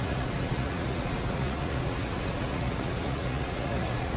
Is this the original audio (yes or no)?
no